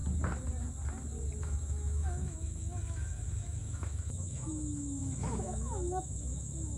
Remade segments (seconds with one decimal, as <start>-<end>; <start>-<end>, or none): 1.4-6.8